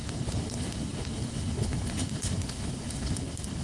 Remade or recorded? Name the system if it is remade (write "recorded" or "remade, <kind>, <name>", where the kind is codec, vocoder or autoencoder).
remade, codec, HILCodec